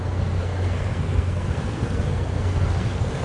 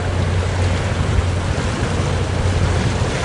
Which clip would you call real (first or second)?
second